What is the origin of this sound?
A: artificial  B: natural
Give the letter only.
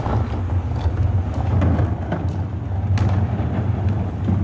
B